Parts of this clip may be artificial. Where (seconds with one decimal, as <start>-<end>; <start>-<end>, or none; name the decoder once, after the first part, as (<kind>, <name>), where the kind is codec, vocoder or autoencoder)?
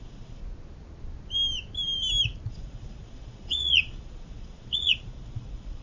0.0-0.4 (vocoder, Vocos); 2.5-5.8